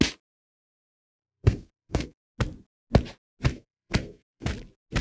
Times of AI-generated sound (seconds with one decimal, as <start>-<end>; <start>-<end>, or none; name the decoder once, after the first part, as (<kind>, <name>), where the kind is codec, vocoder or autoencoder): 1.1-2.2 (codec, SNAC); 3.5-4.5